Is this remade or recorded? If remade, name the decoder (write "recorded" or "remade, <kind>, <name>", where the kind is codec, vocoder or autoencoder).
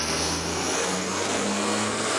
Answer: remade, codec, SNAC